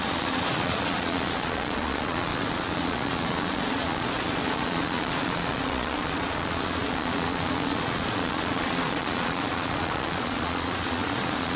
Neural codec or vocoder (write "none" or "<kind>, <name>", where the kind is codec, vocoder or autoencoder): vocoder, Vocos